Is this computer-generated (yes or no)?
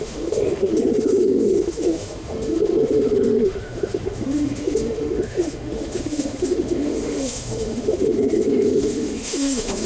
yes